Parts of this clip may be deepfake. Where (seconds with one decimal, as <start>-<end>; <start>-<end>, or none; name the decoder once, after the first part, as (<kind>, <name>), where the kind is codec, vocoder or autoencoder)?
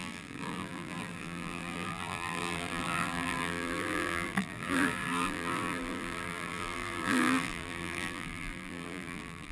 0.0-9.5 (vocoder, BigVGAN v2)